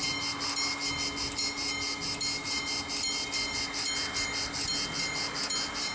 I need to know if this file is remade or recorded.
recorded